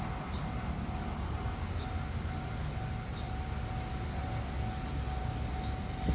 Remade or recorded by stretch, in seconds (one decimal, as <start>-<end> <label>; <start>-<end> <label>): 0.0-6.1 recorded